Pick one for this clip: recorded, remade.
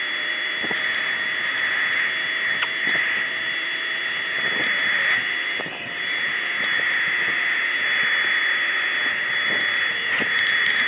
recorded